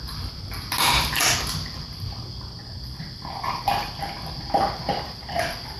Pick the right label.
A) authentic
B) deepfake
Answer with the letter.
A